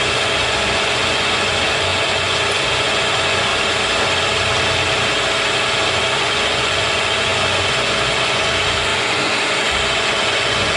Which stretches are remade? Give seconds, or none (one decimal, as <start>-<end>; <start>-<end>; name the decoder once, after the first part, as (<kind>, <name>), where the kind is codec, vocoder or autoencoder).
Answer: 0.0-3.5 (vocoder, Vocos); 6.0-10.8